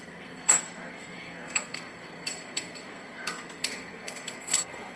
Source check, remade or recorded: remade